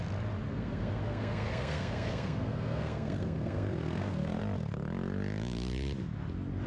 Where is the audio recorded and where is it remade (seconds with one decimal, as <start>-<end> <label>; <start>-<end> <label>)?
0.0-0.5 recorded; 0.5-4.4 remade; 4.4-6.7 recorded